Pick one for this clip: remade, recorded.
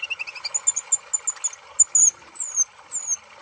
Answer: recorded